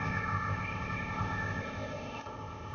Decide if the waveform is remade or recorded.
remade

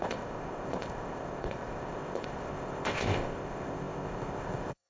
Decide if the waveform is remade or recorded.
remade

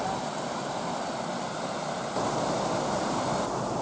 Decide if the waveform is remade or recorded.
recorded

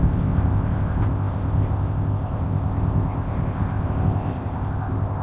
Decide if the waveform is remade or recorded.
remade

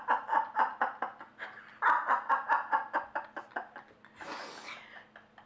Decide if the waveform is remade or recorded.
recorded